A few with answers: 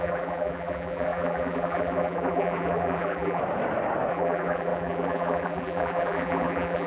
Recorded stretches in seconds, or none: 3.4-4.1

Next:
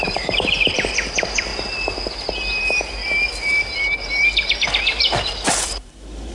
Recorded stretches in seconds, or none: 1.5-5.0

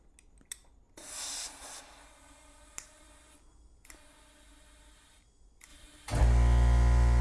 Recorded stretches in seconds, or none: 0.0-7.2